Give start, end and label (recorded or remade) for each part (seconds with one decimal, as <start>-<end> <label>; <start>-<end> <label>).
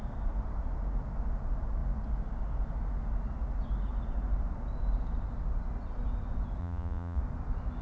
0.0-6.6 recorded; 6.6-7.2 remade; 7.2-7.8 recorded